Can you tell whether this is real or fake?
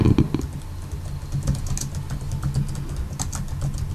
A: real